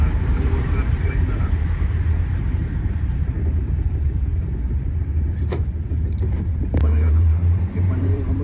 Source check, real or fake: fake